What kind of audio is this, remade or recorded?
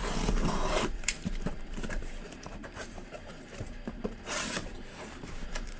remade